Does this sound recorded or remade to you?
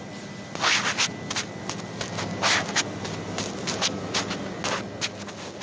recorded